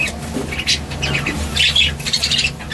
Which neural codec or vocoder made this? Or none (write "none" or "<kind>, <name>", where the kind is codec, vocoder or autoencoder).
none